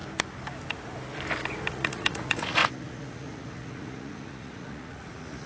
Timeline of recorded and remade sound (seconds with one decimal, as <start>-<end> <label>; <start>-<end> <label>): 0.0-1.7 recorded; 1.7-5.5 remade